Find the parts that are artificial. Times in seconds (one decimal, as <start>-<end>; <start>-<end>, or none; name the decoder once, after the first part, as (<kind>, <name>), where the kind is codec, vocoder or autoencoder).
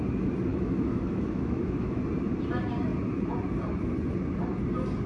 0.5-2.0 (autoencoder, DAC-VAE)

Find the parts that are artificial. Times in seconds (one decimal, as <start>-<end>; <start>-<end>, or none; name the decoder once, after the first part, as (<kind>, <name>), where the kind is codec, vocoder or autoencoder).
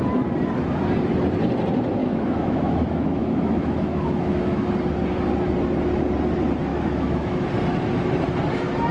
2.0-4.7 (autoencoder, DAC-VAE); 6.7-7.5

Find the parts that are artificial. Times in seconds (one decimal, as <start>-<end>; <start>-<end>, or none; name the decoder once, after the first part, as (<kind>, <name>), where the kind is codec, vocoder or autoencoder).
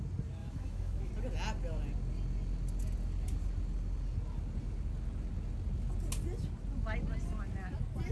0.4-1.1 (autoencoder, DAC-VAE)